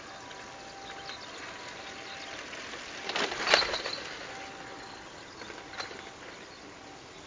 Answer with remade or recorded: recorded